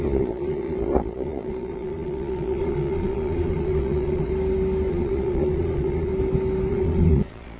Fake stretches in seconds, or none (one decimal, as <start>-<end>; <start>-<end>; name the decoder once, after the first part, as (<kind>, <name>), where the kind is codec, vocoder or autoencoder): 0.0-4.3 (vocoder, Vocos); 4.9-6.1; 6.7-7.6